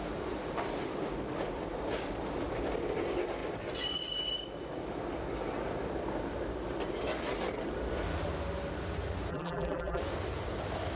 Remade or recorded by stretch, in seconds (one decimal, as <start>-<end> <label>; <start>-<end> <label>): 0.0-9.3 recorded; 9.3-10.0 remade; 10.0-11.0 recorded